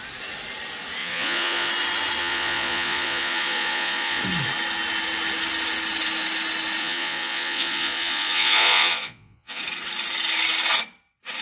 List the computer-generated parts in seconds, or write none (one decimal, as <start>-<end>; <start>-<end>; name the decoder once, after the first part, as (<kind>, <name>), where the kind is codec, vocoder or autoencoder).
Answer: 1.0-1.7 (vocoder, Vocos); 2.2-4.2; 6.8-9.6